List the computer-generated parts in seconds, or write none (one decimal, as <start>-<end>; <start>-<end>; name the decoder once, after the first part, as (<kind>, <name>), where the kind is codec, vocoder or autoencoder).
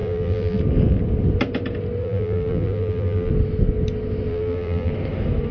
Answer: 0.0-0.6 (vocoder, BigVGAN v2); 2.0-3.3; 4.3-4.9